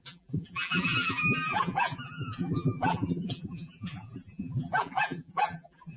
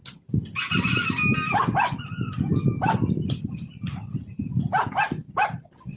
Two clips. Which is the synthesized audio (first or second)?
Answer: first